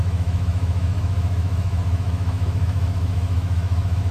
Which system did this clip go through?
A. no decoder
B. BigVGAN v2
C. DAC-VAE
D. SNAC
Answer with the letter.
C